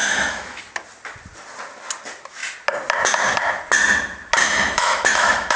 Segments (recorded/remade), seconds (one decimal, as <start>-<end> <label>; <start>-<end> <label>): 0.0-0.6 remade; 0.6-4.4 recorded; 4.4-5.6 remade